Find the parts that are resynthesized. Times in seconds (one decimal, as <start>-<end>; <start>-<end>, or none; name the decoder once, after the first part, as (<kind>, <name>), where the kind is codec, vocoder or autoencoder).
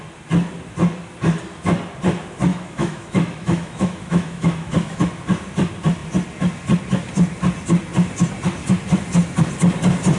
2.5-5.0 (autoencoder, DAC-VAE)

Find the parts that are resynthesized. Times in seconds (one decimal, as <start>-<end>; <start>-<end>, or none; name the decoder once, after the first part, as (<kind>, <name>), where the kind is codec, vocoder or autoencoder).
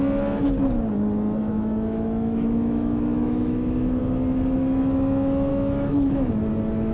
1.4-4.0 (autoencoder, DAC-VAE); 5.5-6.3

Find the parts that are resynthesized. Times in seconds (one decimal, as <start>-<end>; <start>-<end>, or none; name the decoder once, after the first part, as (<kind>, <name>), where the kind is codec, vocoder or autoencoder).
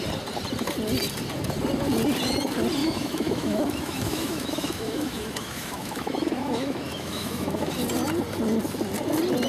2.8-7.7 (autoencoder, DAC-VAE)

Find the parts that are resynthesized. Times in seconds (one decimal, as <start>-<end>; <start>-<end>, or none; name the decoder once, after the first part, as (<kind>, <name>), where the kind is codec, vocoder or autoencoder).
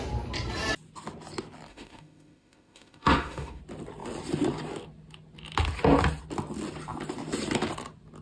1.7-3.6 (autoencoder, DAC-VAE)